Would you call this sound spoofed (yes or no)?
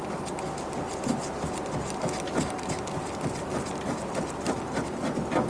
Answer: no